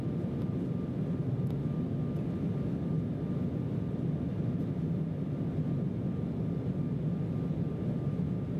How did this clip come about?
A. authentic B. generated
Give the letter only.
A